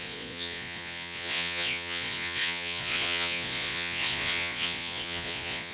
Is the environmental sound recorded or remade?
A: remade